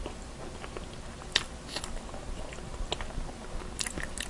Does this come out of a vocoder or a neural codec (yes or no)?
no